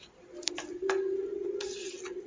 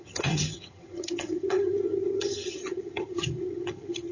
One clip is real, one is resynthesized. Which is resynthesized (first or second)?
second